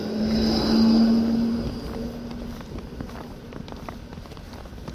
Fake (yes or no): no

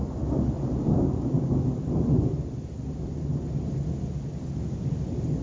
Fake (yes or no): no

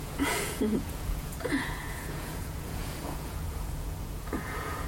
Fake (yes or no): yes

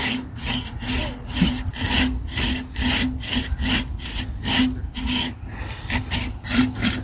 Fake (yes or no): no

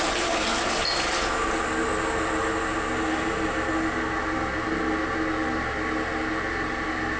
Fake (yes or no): no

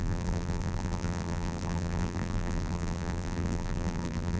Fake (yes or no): yes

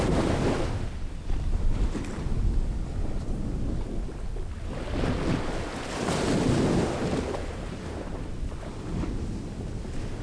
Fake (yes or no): no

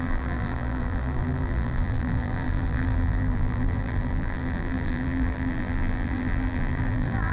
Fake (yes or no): yes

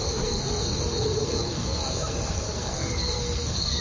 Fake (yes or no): yes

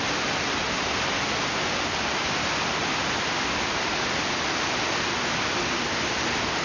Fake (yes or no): no